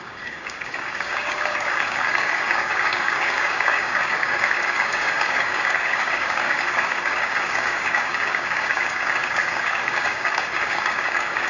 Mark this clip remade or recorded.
remade